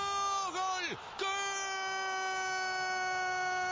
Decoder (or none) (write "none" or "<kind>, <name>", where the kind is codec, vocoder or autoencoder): none